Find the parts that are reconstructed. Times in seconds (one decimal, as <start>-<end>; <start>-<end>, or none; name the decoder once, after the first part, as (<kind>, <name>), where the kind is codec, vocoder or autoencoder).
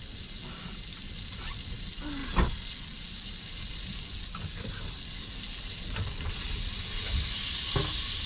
none